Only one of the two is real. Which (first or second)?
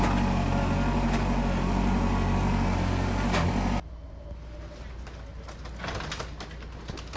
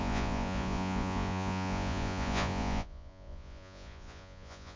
first